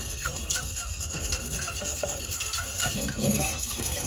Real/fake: fake